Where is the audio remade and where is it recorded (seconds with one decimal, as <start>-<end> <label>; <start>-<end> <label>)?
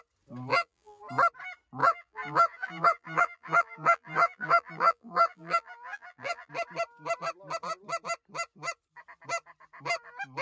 0.0-0.5 recorded; 0.5-1.0 remade; 1.0-1.8 recorded; 1.8-6.5 remade; 6.5-10.4 recorded